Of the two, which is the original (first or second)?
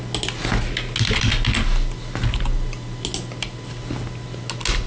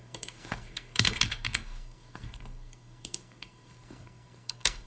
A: first